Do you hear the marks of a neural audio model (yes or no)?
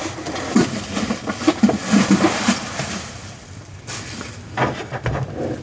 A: no